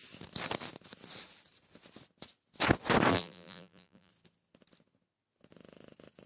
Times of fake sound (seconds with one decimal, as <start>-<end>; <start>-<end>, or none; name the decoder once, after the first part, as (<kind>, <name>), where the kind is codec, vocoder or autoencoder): 3.1-4.1 (vocoder, BigVGAN v2)